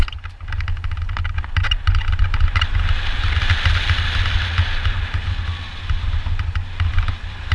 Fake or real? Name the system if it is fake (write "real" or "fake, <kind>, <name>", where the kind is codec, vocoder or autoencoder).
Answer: real